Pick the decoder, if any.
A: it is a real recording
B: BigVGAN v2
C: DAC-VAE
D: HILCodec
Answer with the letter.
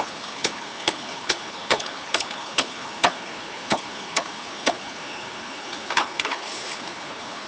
D